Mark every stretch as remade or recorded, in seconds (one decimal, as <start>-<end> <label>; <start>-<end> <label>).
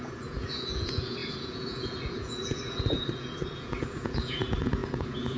0.0-5.4 remade